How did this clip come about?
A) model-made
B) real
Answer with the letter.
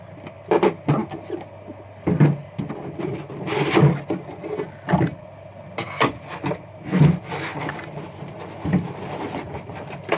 B